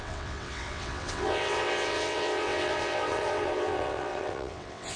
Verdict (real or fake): fake